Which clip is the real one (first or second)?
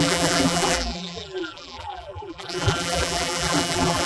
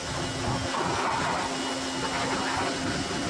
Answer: second